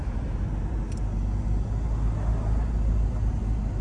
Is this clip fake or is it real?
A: real